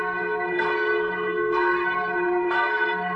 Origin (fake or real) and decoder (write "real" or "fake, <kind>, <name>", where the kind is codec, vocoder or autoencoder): fake, codec, SNAC